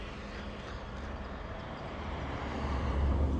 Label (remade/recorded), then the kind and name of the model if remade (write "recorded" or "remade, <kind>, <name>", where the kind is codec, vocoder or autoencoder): remade, vocoder, BigVGAN v2